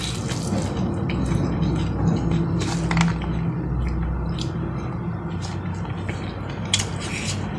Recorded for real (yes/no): yes